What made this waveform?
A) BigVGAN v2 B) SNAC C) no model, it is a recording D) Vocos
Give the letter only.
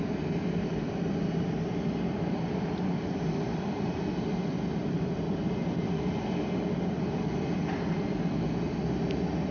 C